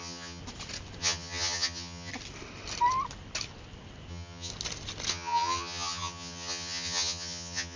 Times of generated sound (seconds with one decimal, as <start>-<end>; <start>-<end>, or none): 0.0-0.4; 1.0-2.1; 4.1-4.5; 5.1-7.8